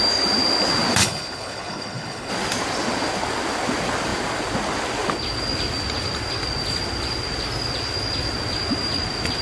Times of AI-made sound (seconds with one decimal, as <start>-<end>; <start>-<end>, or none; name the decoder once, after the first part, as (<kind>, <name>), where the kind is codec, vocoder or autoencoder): 1.0-2.3 (codec, HILCodec)